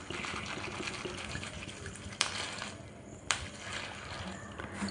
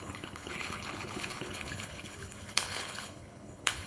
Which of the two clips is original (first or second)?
first